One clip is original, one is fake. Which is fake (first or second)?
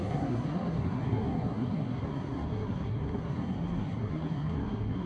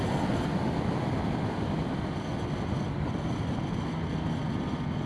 first